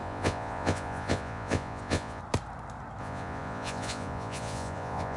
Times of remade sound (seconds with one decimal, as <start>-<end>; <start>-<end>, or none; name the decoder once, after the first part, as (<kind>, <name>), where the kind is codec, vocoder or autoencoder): 0.0-2.2 (vocoder, Vocos); 3.0-5.2